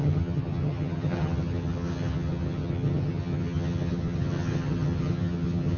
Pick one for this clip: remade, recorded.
remade